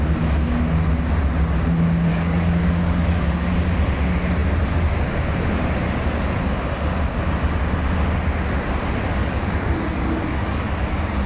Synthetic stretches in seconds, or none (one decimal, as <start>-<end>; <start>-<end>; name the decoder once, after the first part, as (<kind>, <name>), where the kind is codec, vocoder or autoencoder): 2.1-3.5 (codec, DAC); 9.2-10.7